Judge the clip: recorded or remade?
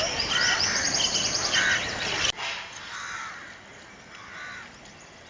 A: recorded